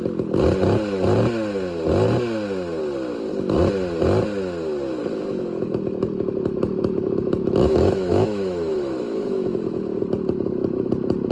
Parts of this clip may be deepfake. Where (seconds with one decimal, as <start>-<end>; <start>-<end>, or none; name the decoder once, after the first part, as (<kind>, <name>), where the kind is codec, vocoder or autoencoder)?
5.0-10.0 (autoencoder, DAC-VAE)